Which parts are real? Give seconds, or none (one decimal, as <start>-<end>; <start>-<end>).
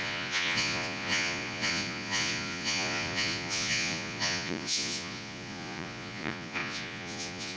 none